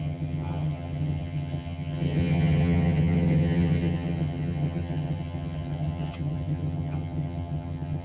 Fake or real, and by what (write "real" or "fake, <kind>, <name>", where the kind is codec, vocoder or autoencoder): fake, vocoder, HiFi-GAN